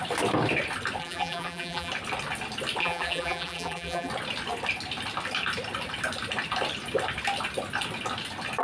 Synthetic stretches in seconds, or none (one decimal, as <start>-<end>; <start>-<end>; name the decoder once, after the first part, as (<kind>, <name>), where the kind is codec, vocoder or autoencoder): 1.0-1.9 (vocoder, BigVGAN v2); 2.8-4.1